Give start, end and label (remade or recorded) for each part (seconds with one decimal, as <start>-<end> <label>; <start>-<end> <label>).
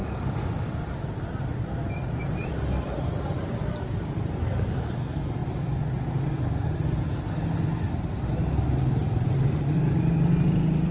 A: 0.0-1.8 recorded; 1.8-4.9 remade; 4.9-9.0 recorded; 9.0-9.9 remade; 9.9-10.9 recorded